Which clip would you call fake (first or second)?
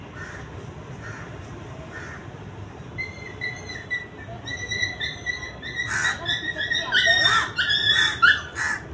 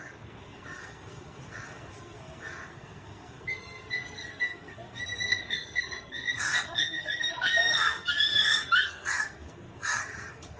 second